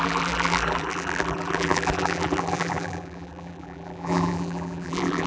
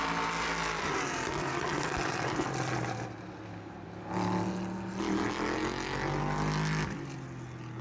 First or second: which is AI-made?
first